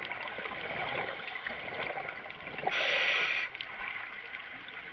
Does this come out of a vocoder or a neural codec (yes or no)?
no